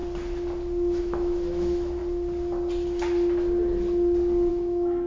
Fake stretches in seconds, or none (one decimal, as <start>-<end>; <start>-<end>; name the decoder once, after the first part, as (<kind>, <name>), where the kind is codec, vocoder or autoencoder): 1.0-2.0 (autoencoder, DAC-VAE); 4.5-5.1